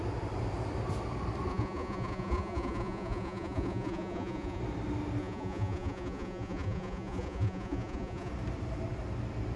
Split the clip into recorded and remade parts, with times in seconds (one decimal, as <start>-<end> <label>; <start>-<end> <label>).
0.0-1.5 recorded; 1.5-4.6 remade; 4.6-5.2 recorded; 5.2-8.3 remade; 8.3-9.6 recorded